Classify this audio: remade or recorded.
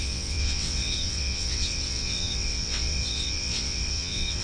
remade